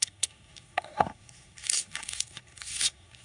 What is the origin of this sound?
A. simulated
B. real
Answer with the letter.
A